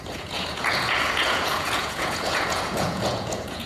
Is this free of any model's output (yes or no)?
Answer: no